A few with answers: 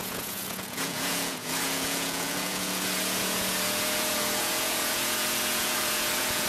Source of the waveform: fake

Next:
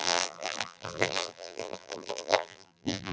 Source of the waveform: fake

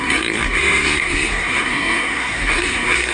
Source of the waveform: fake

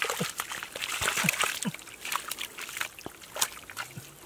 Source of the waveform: real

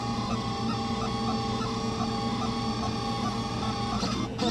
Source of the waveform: real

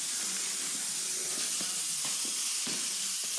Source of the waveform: real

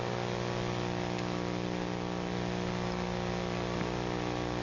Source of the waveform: real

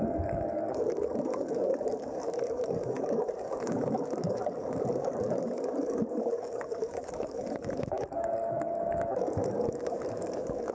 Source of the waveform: fake